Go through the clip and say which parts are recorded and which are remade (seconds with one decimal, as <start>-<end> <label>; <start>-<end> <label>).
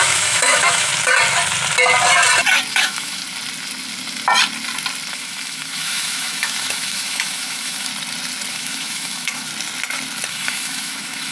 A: 0.0-0.9 remade; 0.9-2.7 recorded; 2.7-3.2 remade; 3.2-5.1 recorded; 5.1-7.9 remade; 7.9-8.5 recorded; 8.5-9.5 remade; 9.5-10.3 recorded; 10.3-11.3 remade